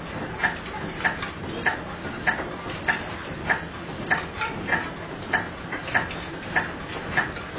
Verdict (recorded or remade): recorded